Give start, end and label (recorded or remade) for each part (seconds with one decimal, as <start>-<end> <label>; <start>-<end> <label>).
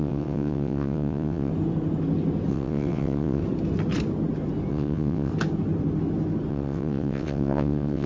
0.0-1.5 remade; 1.5-2.5 recorded; 2.5-3.4 remade; 3.4-4.7 recorded; 4.7-5.3 remade; 5.3-6.5 recorded; 6.5-8.1 remade